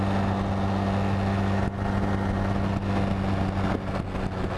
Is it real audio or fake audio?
real